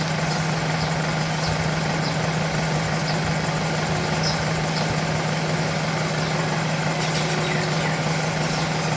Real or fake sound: real